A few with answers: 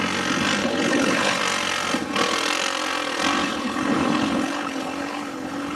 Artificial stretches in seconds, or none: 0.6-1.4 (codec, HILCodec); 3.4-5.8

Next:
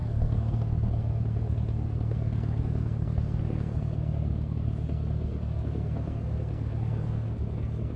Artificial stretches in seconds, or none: 0.0-8.0 (codec, SNAC)

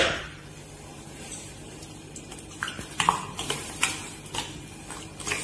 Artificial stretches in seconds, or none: 0.9-4.1 (vocoder, BigVGAN v2)

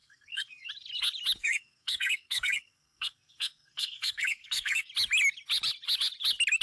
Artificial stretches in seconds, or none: 0.0-0.7 (codec, SNAC); 1.4-4.9

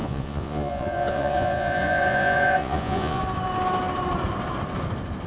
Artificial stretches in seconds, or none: 0.0-3.2 (vocoder, Vocos)

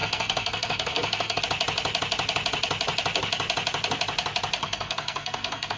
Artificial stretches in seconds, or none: 0.0-1.4 (codec, SNAC); 4.6-5.8

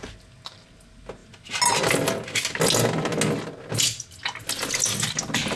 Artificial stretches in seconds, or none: none